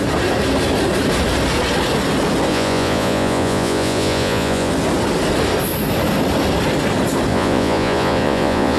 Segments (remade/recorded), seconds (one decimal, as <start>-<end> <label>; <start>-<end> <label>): 0.0-2.5 recorded; 2.5-4.7 remade; 4.7-7.3 recorded; 7.3-8.8 remade